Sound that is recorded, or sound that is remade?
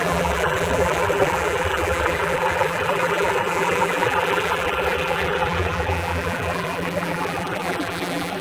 remade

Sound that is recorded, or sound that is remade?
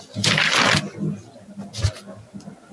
recorded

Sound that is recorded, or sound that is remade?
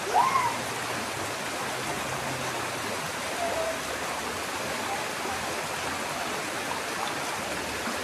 recorded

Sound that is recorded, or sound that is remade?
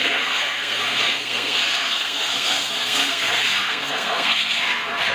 remade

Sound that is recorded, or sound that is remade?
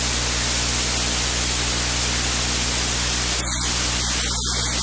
recorded